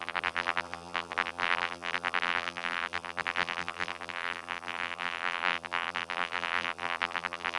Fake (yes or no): yes